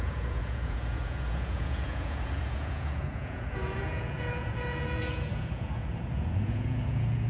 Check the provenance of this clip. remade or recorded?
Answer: remade